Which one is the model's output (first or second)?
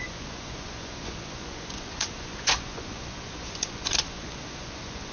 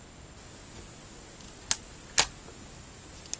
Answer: first